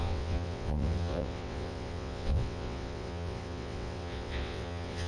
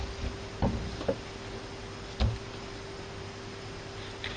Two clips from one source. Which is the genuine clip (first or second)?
second